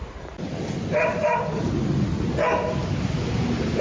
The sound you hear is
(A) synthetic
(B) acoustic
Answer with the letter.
B